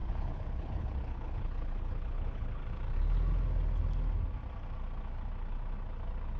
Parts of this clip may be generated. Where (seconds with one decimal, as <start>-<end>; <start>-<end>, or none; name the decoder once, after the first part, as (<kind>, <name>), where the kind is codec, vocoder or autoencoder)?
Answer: 0.0-2.6 (codec, HILCodec)